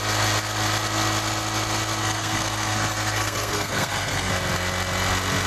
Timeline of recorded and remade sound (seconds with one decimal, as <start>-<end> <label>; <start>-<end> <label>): 0.0-2.0 recorded; 2.0-4.3 remade; 4.3-5.5 recorded